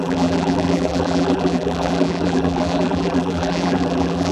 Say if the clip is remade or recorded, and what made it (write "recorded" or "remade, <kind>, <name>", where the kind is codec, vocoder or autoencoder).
remade, vocoder, BigVGAN v2